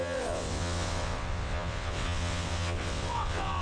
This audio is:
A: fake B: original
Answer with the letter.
A